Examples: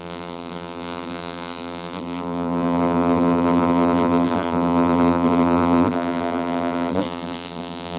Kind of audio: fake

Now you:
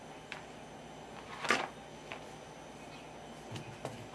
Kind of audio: real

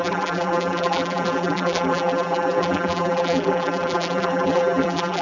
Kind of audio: fake